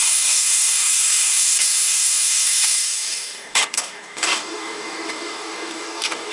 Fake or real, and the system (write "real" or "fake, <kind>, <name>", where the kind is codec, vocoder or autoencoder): fake, codec, DAC